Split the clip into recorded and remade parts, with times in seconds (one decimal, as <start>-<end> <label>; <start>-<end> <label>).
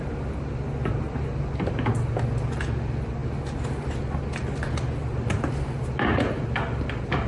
0.0-7.3 recorded